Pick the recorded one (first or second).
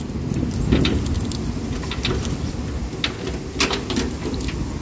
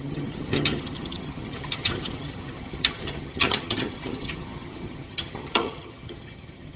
first